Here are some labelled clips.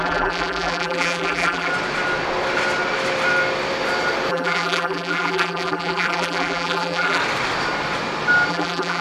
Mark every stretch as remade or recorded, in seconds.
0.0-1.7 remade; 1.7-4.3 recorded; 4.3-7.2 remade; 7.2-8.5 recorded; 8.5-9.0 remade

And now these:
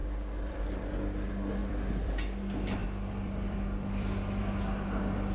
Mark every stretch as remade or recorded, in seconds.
0.0-0.6 remade; 0.6-1.6 recorded; 1.6-2.1 remade; 2.1-2.8 recorded; 2.8-4.4 remade; 4.4-5.3 recorded

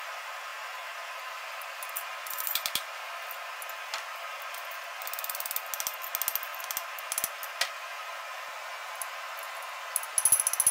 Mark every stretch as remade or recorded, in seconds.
0.0-10.7 recorded

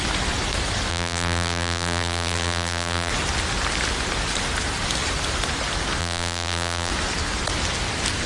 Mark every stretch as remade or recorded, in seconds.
0.0-0.9 recorded; 0.9-3.1 remade; 3.1-6.0 recorded; 6.0-6.9 remade; 6.9-8.3 recorded

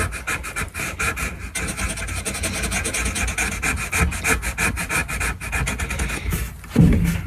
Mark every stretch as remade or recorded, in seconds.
0.0-7.3 recorded

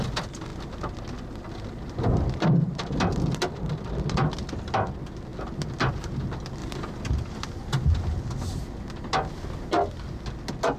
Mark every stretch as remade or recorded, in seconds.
0.0-6.6 recorded; 6.6-7.1 remade; 7.1-10.8 recorded

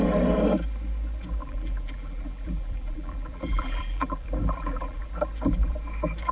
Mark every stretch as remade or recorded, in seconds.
0.0-1.4 recorded; 1.4-5.1 remade; 5.1-6.3 recorded